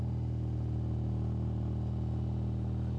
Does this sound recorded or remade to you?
recorded